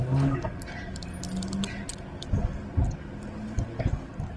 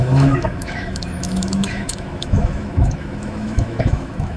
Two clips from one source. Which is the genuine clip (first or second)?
first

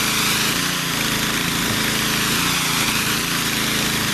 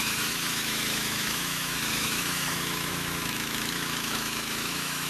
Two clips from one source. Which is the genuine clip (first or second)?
first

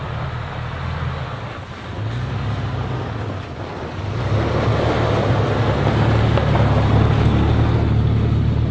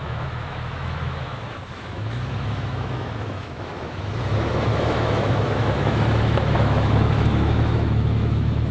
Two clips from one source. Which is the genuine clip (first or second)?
first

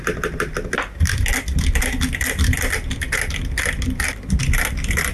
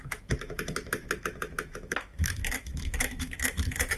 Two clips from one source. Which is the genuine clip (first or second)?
first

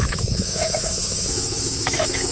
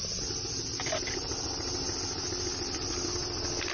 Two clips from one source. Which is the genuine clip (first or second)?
second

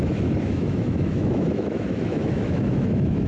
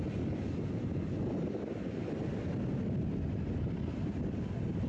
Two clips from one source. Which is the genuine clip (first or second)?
second